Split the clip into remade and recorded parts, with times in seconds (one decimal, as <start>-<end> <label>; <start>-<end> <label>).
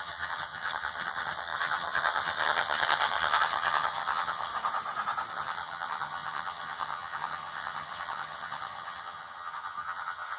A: 0.0-4.5 remade; 4.5-5.3 recorded; 5.3-10.4 remade